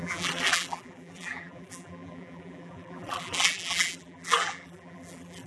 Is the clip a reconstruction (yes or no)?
yes